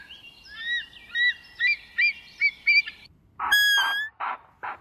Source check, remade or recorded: recorded